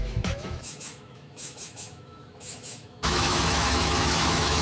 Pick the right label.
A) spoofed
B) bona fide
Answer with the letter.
A